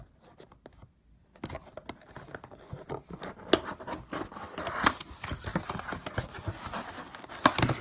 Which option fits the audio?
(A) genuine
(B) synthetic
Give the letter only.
A